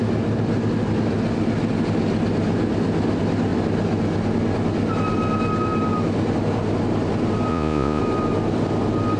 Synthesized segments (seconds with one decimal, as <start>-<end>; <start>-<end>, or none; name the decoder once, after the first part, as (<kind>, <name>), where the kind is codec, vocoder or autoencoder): 7.5-8.0 (vocoder, Vocos)